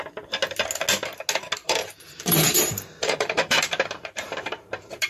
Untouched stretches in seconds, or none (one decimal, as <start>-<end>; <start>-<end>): 0.0-1.6